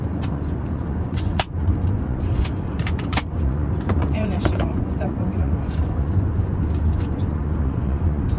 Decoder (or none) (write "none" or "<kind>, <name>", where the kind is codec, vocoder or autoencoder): vocoder, Vocos